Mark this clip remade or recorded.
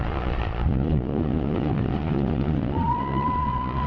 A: remade